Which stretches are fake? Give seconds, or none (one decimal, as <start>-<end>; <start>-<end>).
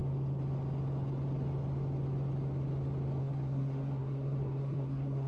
3.2-5.3